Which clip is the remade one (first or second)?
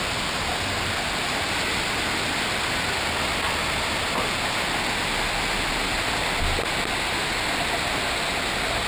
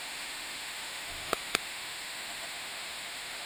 second